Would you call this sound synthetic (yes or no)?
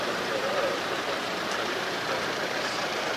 yes